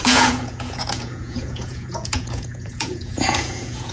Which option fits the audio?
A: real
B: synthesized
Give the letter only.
B